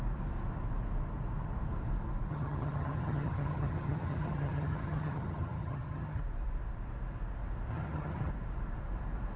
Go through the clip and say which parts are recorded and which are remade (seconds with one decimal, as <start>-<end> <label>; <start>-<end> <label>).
0.0-2.3 recorded; 2.3-6.2 remade; 6.2-7.7 recorded; 7.7-8.3 remade; 8.3-9.4 recorded